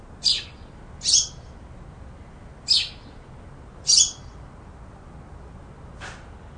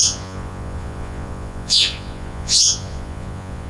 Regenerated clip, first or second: second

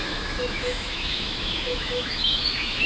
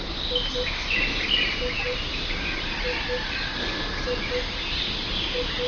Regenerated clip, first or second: first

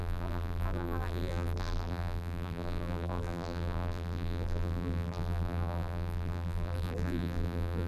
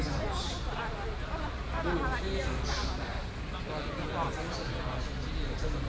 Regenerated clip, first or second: first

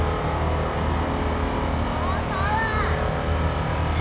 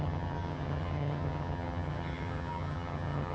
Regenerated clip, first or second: second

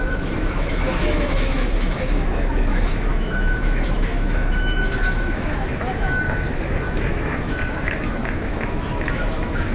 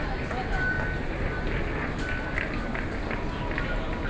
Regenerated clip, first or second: first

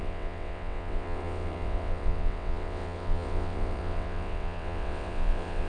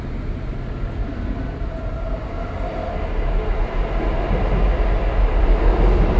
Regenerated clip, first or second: first